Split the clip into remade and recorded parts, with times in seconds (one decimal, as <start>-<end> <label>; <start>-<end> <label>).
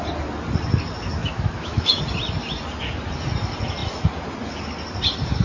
0.0-1.2 recorded; 1.2-2.0 remade; 2.0-5.4 recorded